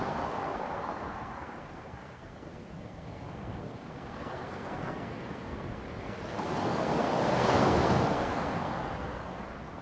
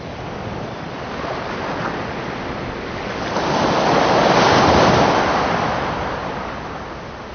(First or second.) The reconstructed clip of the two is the first